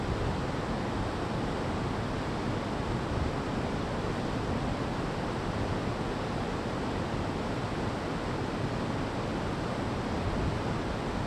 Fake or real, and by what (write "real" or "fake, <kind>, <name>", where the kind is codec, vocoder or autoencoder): real